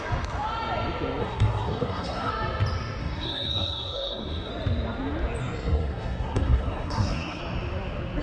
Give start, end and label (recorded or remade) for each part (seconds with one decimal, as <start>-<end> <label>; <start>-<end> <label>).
0.0-1.2 recorded; 1.2-2.3 remade; 2.3-3.0 recorded; 3.0-4.5 remade; 4.5-5.4 recorded; 5.4-7.4 remade; 7.4-8.2 recorded